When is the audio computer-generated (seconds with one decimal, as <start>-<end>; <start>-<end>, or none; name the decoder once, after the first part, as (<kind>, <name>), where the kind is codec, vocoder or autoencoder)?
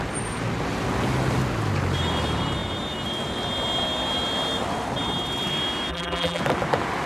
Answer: 5.9-6.4 (vocoder, BigVGAN v2)